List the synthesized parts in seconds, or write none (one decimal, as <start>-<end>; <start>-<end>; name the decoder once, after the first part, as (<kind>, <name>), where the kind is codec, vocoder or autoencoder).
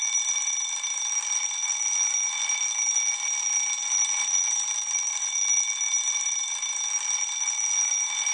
none